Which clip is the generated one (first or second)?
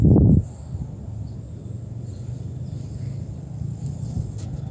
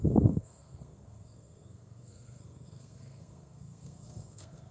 second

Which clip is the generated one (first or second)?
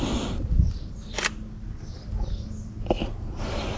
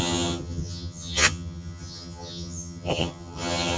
second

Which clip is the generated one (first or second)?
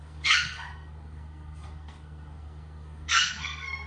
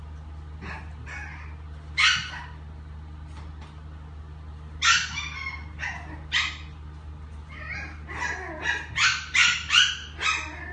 first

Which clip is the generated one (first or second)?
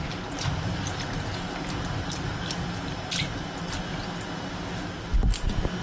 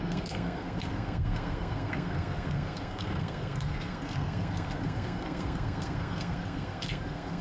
second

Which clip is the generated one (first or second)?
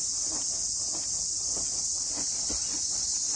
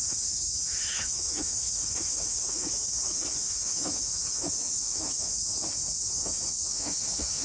second